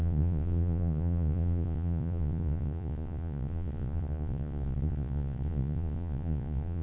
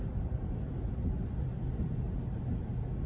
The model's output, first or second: first